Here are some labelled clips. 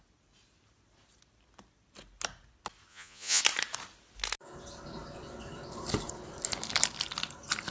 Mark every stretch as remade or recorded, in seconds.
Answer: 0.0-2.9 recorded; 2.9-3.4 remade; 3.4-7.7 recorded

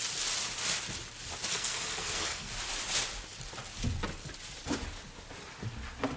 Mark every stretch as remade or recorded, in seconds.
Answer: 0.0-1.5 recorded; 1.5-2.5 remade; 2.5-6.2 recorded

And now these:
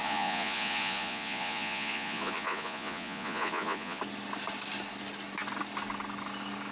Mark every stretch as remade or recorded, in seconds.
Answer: 0.0-4.0 remade; 4.0-6.7 recorded

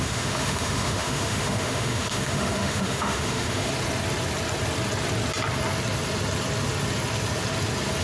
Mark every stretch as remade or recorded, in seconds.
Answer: 0.0-3.7 remade; 3.7-8.0 recorded

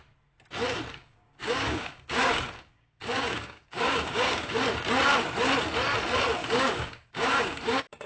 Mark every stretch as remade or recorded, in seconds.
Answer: 0.0-0.9 recorded; 0.9-4.6 remade; 4.6-6.4 recorded; 6.4-8.1 remade

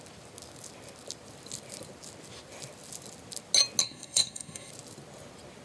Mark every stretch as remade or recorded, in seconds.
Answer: 0.0-3.8 recorded; 3.8-4.7 remade; 4.7-5.6 recorded